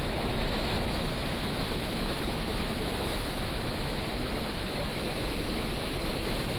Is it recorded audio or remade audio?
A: remade